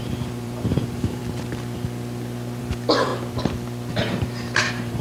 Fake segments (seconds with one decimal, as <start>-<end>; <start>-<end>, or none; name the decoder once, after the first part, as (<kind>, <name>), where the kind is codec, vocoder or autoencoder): 0.0-1.2 (vocoder, BigVGAN v2); 2.6-3.1; 3.9-5.0